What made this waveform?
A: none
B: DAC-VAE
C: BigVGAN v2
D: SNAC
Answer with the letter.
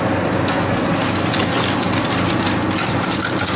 A